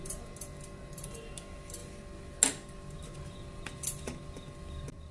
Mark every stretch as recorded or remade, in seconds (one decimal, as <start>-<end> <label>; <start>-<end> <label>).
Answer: 0.0-5.1 recorded